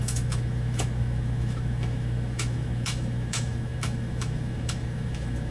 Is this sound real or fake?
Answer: fake